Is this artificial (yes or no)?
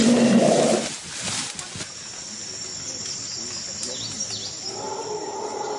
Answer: no